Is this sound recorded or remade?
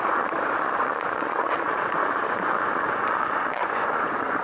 remade